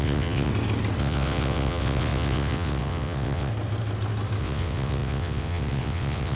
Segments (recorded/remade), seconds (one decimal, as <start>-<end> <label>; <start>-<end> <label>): 0.0-0.5 remade; 0.5-1.0 recorded; 1.0-3.5 remade; 3.5-4.4 recorded; 4.4-6.4 remade